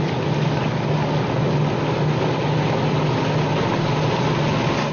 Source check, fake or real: real